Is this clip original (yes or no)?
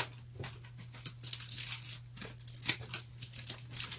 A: yes